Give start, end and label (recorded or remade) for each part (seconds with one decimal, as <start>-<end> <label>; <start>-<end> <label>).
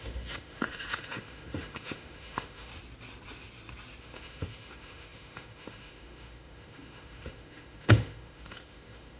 0.0-2.7 remade; 2.7-4.0 recorded; 4.0-9.2 remade